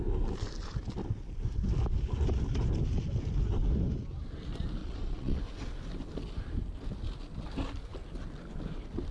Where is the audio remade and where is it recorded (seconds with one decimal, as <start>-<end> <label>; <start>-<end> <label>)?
0.0-4.8 recorded; 4.8-5.4 remade; 5.4-9.1 recorded